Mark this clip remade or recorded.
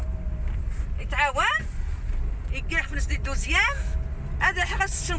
recorded